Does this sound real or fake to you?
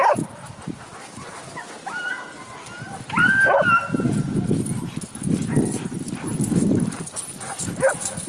real